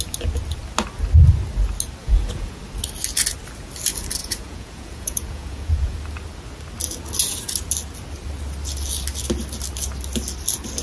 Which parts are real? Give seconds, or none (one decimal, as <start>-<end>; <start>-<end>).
0.0-2.0; 2.6-4.2; 6.0-10.8